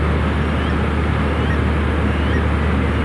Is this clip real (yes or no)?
yes